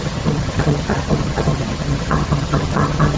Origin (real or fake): fake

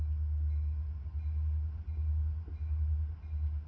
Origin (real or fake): real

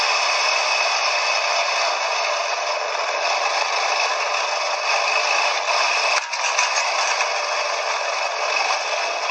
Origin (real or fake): real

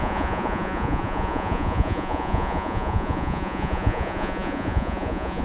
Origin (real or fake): fake